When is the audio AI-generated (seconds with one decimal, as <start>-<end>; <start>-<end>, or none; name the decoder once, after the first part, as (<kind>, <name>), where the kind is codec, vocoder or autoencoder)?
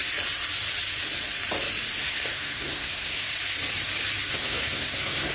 2.0-3.3 (codec, SNAC); 4.3-5.3